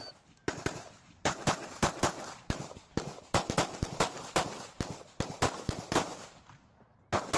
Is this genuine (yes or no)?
no